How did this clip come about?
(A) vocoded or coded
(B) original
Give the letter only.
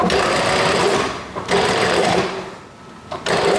B